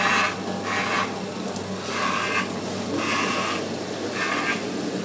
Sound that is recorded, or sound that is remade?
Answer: recorded